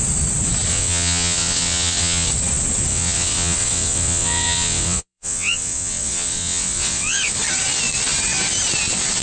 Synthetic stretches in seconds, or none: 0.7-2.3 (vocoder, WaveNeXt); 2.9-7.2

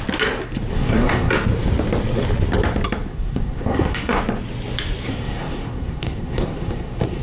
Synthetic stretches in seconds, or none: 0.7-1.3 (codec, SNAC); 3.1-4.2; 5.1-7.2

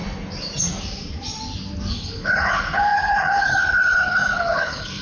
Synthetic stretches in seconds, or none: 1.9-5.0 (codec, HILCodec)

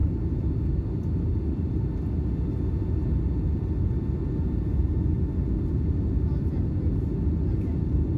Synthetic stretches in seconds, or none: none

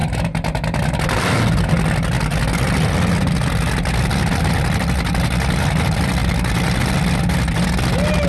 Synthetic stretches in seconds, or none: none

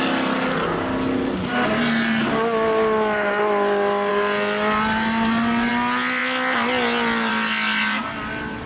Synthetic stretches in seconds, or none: none

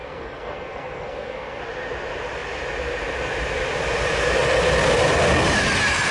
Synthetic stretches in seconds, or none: 0.0-1.6 (codec, SNAC)

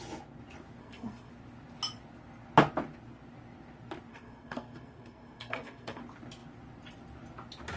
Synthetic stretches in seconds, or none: 0.8-1.3 (codec, SNAC); 4.1-6.0